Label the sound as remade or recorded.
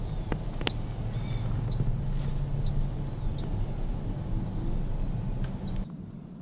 recorded